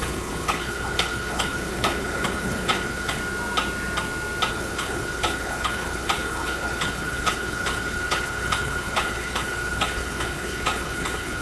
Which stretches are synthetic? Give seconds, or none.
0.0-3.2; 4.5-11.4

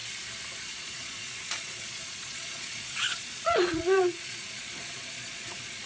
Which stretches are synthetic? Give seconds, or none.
0.6-5.9

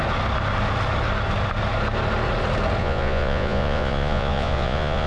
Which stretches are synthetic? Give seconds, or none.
2.8-5.1

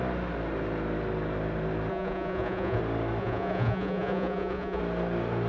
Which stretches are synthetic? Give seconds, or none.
1.9-2.8; 3.2-4.8

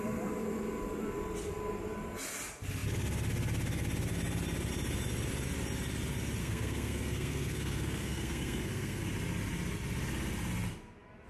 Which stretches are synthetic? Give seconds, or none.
6.4-9.1